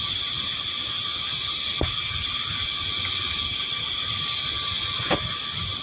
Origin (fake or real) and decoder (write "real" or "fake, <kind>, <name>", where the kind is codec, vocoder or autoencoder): real